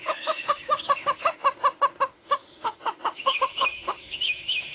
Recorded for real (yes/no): no